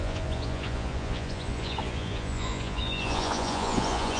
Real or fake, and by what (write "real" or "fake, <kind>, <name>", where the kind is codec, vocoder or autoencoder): fake, vocoder, Vocos